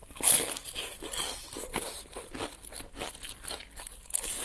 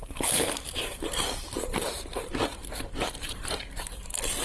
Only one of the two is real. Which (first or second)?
first